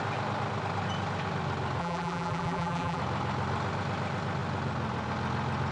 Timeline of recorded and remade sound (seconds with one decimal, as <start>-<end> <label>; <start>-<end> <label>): 0.0-1.8 recorded; 1.8-3.0 remade; 3.0-5.7 recorded